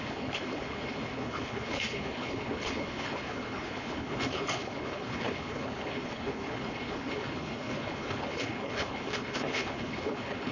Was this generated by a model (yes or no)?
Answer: yes